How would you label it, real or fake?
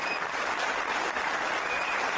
fake